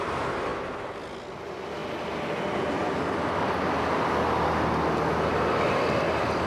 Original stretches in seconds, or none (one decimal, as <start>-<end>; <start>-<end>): 0.0-6.5